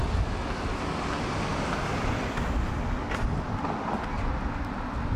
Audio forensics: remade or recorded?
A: recorded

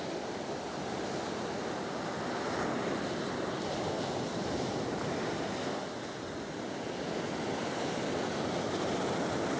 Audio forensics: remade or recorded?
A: recorded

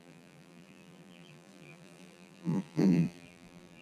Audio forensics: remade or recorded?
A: remade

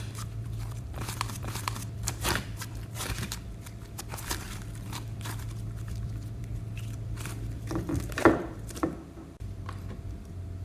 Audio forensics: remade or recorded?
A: remade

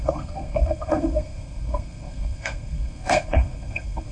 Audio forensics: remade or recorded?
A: remade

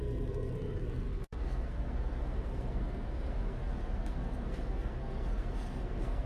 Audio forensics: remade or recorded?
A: remade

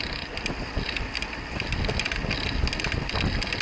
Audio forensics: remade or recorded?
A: recorded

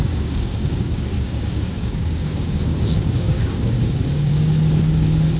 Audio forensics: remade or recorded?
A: remade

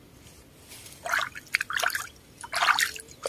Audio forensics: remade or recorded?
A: recorded